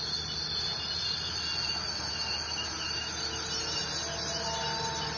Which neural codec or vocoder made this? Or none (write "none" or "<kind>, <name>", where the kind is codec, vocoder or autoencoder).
none